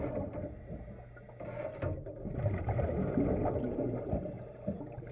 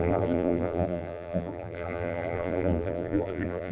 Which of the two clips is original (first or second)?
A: first